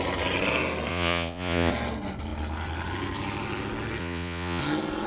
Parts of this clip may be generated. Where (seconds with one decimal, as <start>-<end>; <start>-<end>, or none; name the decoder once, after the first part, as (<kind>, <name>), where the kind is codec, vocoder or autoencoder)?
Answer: 0.9-1.7 (vocoder, Vocos); 4.0-4.6